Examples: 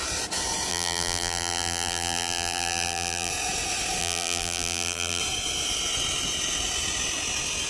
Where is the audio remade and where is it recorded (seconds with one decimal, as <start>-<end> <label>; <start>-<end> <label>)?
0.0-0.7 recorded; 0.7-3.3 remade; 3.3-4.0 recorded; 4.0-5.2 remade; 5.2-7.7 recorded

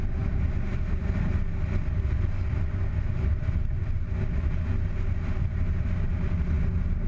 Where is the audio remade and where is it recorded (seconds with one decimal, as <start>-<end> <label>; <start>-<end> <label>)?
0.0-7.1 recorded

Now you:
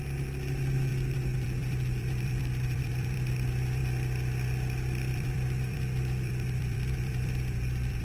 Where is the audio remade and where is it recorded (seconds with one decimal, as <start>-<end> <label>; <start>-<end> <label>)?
0.0-8.0 remade

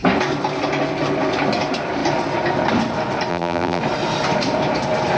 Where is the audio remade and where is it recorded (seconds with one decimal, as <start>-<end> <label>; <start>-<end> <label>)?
0.0-3.3 recorded; 3.3-3.8 remade; 3.8-5.2 recorded